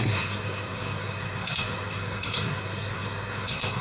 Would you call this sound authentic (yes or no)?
no